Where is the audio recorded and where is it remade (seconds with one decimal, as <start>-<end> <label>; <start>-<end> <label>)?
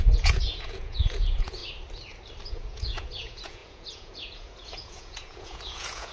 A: 0.0-1.6 remade; 1.6-2.5 recorded; 2.5-6.1 remade